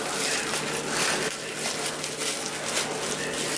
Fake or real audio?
real